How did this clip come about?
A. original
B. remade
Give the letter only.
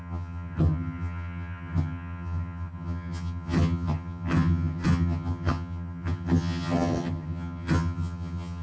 B